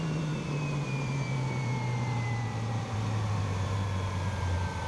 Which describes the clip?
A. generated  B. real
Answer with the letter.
B